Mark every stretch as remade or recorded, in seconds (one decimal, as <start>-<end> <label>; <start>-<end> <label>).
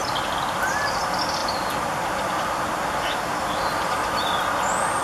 0.0-5.0 recorded